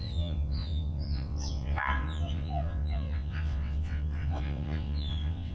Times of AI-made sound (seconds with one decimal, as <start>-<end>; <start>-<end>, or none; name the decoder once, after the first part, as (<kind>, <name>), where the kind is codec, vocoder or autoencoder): 0.0-5.5 (vocoder, WaveNeXt)